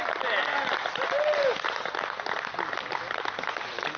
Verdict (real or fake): real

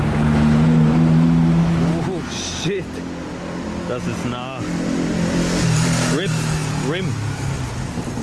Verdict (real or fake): real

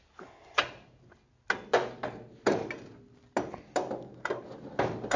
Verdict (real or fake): real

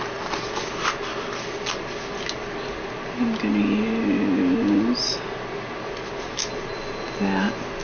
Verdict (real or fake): real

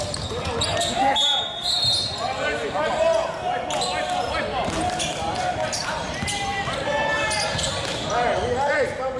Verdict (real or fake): real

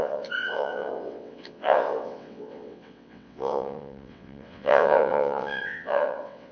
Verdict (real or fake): fake